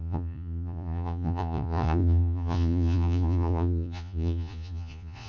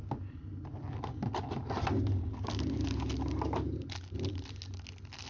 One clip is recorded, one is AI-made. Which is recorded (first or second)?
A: second